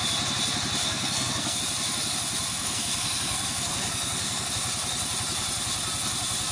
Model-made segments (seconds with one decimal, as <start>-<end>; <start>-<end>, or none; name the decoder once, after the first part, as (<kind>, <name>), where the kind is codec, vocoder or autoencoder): 0.8-1.6 (codec, SNAC); 2.5-4.5